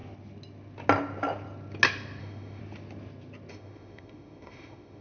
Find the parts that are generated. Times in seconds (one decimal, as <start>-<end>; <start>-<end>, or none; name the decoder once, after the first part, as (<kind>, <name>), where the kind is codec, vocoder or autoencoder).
2.2-2.6 (autoencoder, DAC-VAE); 3.5-5.0